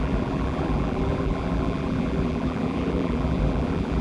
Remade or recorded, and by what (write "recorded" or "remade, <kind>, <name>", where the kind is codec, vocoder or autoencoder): remade, vocoder, BigVGAN v2